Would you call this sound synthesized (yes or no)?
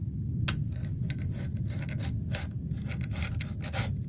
no